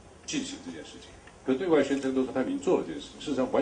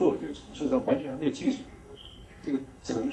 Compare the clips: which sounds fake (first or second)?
second